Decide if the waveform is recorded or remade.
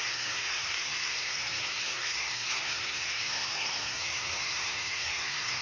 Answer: remade